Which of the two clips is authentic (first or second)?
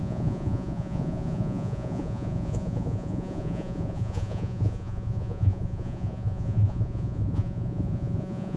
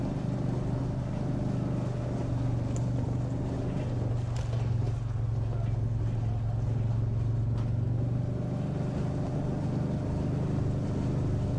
second